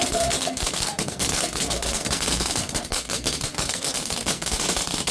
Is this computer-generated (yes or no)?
yes